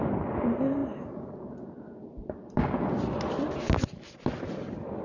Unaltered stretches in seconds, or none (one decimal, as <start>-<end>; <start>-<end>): 0.0-5.0